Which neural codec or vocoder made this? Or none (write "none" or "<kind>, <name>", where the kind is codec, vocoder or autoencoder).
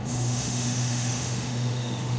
autoencoder, DAC-VAE